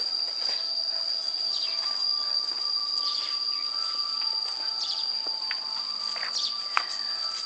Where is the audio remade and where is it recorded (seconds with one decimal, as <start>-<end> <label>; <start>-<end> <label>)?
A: 0.0-7.5 recorded